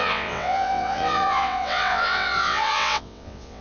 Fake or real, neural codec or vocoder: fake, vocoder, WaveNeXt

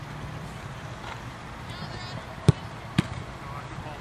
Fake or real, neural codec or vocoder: real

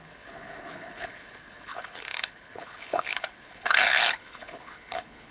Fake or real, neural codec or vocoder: fake, codec, HILCodec